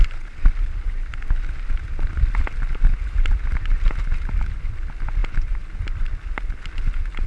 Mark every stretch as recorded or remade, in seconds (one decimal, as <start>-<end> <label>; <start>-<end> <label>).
0.0-7.3 recorded